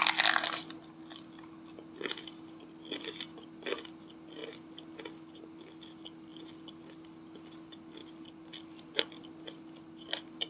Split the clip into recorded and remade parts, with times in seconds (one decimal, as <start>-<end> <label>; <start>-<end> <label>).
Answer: 0.0-10.5 recorded